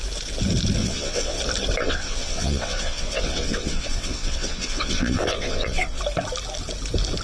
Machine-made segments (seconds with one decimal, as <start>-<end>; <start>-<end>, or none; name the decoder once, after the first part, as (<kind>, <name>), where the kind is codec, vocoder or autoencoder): 0.8-1.4 (vocoder, WaveNeXt); 1.8-6.0